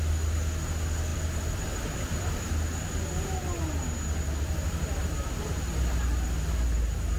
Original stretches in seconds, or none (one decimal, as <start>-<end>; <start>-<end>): 0.0-1.1; 2.5-7.2